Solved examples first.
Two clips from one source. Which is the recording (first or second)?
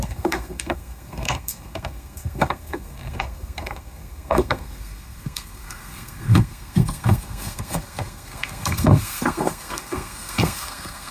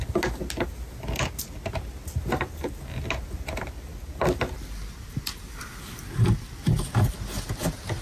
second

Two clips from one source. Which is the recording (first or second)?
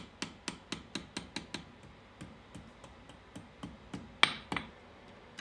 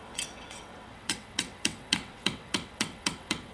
first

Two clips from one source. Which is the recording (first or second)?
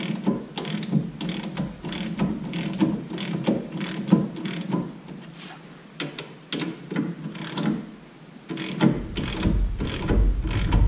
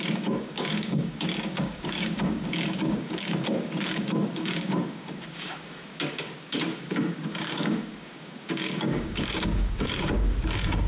first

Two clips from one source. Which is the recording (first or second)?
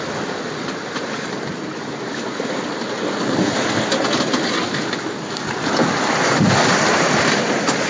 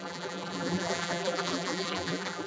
first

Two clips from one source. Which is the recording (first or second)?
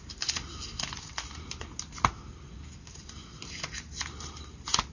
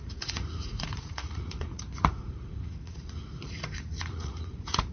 first